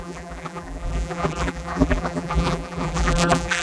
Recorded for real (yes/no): no